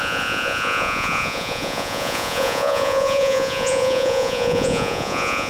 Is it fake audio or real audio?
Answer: fake